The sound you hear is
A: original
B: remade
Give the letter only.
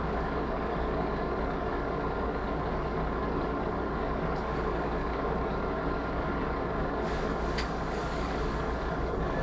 B